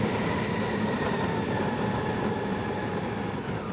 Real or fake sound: fake